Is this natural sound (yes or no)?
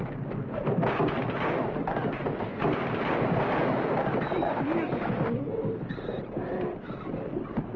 yes